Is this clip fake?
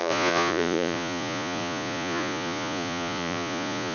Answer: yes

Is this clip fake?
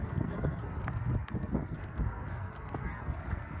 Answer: yes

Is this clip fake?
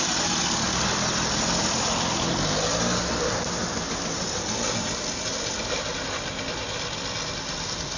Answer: no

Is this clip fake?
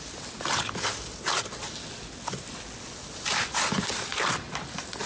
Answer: no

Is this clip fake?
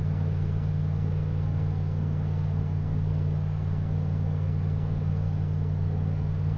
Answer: yes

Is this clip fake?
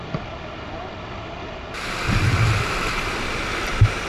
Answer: no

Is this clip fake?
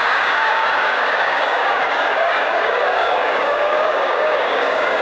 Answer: yes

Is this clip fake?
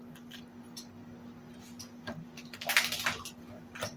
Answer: no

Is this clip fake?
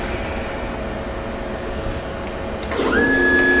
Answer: no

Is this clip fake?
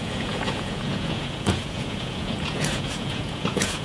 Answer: yes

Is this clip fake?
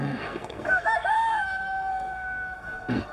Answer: yes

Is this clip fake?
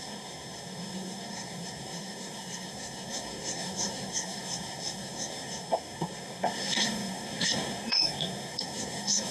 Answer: yes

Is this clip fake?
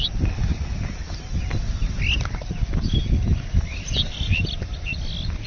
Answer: no